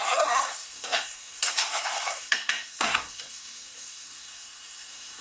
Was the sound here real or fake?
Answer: fake